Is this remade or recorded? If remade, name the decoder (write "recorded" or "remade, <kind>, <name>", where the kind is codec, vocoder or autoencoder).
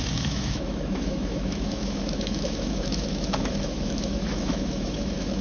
remade, autoencoder, DAC-VAE